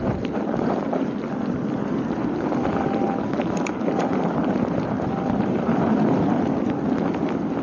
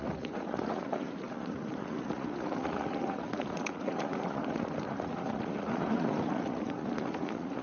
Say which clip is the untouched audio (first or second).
first